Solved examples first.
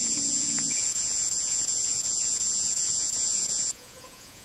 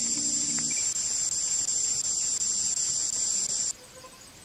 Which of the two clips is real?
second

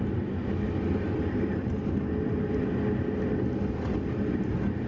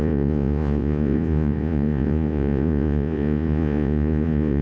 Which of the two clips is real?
first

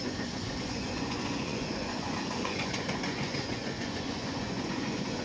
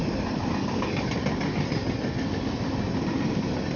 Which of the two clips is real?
second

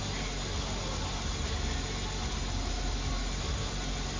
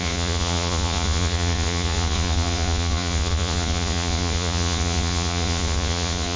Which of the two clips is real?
first